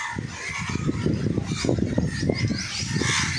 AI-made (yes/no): no